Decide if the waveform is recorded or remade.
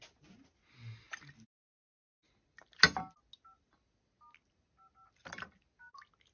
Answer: recorded